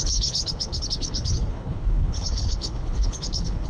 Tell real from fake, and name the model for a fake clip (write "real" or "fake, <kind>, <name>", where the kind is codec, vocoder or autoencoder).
fake, codec, HILCodec